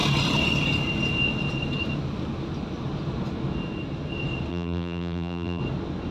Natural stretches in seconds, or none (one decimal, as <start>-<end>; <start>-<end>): 0.0-4.5; 5.6-6.1